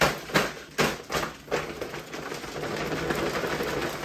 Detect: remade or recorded recorded